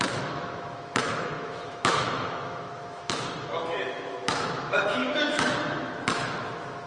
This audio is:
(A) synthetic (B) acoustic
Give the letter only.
A